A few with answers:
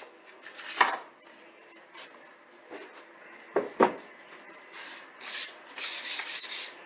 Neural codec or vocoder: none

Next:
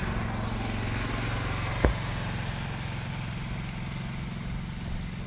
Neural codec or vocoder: none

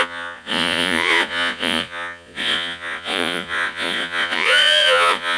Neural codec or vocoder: vocoder, Vocos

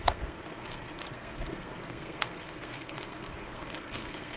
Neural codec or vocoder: codec, SNAC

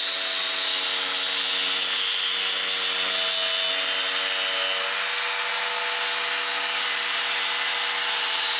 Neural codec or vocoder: none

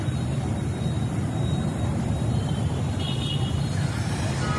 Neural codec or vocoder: none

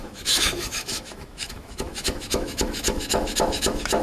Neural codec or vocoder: autoencoder, DAC-VAE